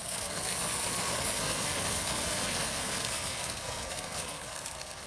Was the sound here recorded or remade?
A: remade